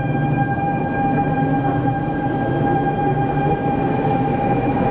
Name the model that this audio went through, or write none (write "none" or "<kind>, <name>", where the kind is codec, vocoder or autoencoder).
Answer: autoencoder, DAC-VAE